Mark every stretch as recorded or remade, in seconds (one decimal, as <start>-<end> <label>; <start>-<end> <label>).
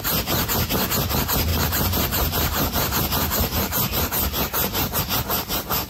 0.0-1.5 recorded; 1.5-5.0 remade; 5.0-5.9 recorded